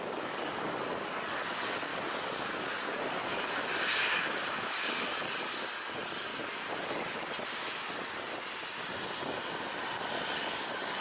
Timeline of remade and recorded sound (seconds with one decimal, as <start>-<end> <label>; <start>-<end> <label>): 0.0-6.3 remade; 6.3-10.4 recorded; 10.4-11.0 remade

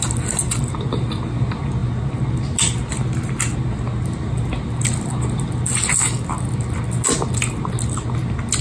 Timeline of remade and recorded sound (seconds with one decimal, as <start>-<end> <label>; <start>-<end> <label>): 0.0-8.6 recorded